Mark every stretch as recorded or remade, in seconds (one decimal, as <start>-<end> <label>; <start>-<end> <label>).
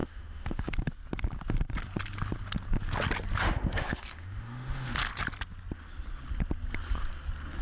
0.0-0.7 remade; 0.7-3.4 recorded; 3.4-4.9 remade; 4.9-7.6 recorded